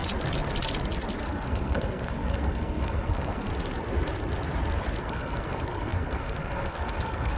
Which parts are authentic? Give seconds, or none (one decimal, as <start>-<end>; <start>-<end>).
0.0-1.2; 3.5-5.0